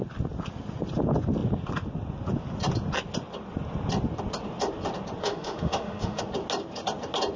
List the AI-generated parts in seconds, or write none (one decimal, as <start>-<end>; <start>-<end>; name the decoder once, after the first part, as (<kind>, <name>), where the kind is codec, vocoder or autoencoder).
5.2-6.2 (autoencoder, DAC-VAE)